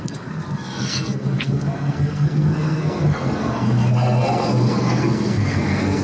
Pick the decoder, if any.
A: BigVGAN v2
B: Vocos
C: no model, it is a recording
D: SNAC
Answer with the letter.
D